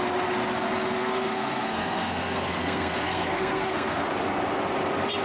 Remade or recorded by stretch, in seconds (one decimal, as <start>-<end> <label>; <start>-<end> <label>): 0.0-1.0 recorded; 1.0-4.1 remade; 4.1-5.2 recorded